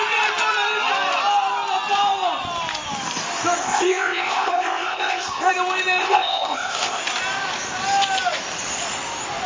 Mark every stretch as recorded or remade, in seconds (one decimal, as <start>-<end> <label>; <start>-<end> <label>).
0.0-3.6 recorded; 3.6-5.5 remade; 5.5-6.0 recorded; 6.0-7.0 remade; 7.0-9.5 recorded